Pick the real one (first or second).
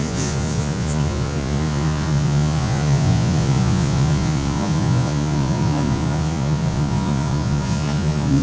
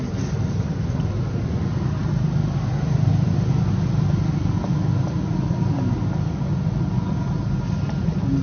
second